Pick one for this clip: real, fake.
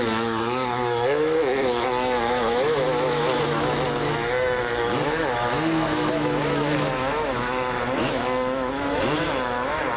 fake